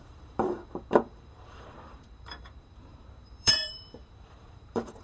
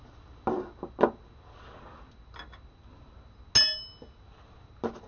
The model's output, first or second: first